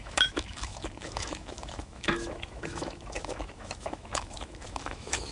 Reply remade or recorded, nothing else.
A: remade